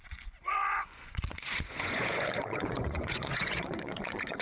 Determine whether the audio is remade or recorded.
remade